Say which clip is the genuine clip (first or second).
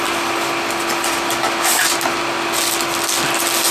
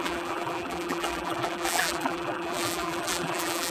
first